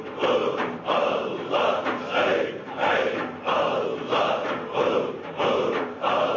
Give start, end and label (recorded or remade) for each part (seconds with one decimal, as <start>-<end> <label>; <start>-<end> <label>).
0.0-0.4 recorded; 0.4-1.8 remade; 1.8-3.9 recorded; 3.9-5.0 remade; 5.0-6.4 recorded